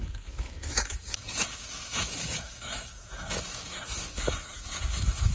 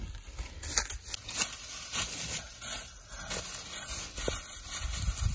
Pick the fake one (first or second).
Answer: first